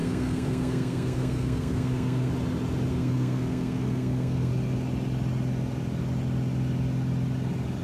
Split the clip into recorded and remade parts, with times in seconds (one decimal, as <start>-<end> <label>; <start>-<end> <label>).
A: 0.0-2.3 remade; 2.3-2.9 recorded; 2.9-4.5 remade; 4.5-7.8 recorded